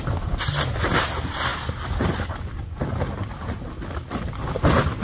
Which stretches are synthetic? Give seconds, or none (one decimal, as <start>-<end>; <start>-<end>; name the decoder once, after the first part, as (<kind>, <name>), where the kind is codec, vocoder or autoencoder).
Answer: none